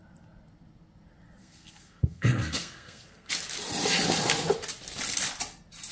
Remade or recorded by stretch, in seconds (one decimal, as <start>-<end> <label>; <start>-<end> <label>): 0.0-1.4 recorded; 1.4-3.3 remade; 3.3-5.9 recorded